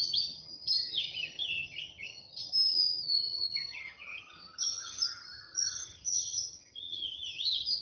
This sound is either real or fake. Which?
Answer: fake